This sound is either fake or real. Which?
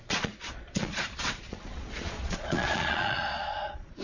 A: fake